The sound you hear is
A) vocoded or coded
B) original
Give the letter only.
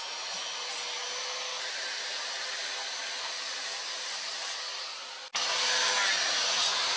B